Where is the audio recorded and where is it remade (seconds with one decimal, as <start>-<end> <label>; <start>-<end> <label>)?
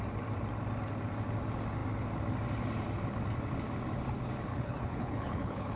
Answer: 0.0-4.5 recorded; 4.5-5.8 remade